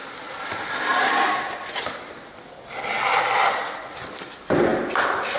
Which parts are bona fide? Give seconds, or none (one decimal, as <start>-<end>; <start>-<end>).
0.0-5.4